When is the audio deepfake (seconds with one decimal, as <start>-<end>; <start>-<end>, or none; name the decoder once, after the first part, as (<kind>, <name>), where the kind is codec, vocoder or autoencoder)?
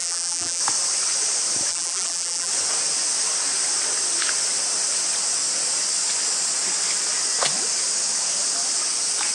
0.0-0.6 (vocoder, BigVGAN v2); 1.7-2.5